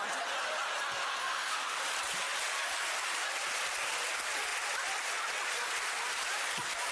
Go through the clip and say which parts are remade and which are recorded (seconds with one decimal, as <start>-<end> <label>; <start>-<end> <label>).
0.0-1.2 recorded; 1.2-1.8 remade; 1.8-6.9 recorded